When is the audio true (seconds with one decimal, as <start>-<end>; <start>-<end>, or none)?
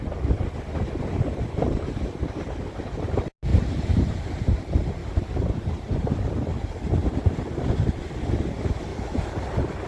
0.0-3.5; 4.5-5.0; 6.2-7.0; 7.7-8.9; 9.5-9.9